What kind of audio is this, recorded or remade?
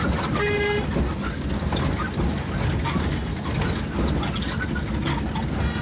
recorded